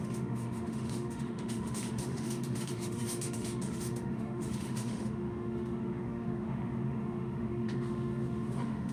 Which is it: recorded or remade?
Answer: remade